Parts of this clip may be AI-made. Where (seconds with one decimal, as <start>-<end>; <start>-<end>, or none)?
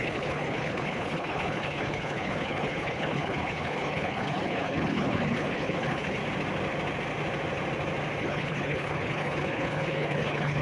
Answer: 0.0-6.2; 8.2-10.6